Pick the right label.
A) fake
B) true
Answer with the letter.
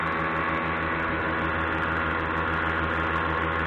B